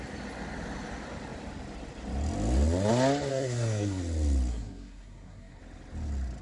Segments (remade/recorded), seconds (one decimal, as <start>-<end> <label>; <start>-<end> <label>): 0.0-3.3 recorded; 3.3-4.0 remade; 4.0-4.5 recorded; 4.5-5.6 remade; 5.6-6.4 recorded